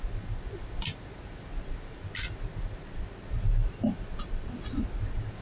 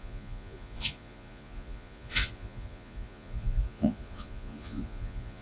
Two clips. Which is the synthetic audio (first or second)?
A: second